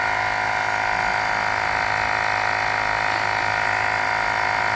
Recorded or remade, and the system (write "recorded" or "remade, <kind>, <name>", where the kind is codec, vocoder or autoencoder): recorded